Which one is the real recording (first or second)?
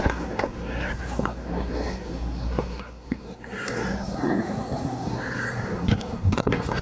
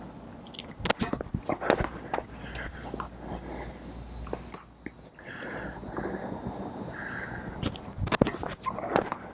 second